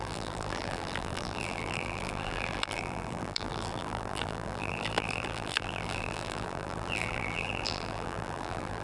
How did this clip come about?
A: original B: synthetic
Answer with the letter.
B